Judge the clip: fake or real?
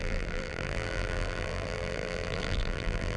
fake